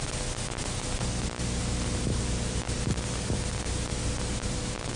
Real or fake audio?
real